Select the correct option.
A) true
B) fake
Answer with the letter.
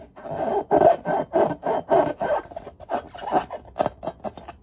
A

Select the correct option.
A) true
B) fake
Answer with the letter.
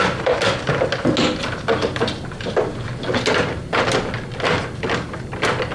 A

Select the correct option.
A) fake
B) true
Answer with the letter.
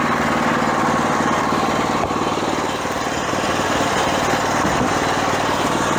B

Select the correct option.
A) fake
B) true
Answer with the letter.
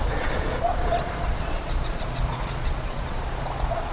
A